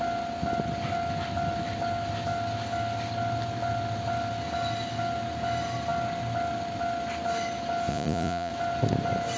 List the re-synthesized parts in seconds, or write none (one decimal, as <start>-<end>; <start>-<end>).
7.9-8.5